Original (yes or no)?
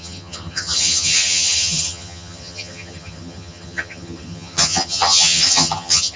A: no